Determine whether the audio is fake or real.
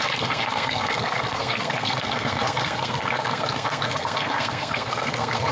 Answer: fake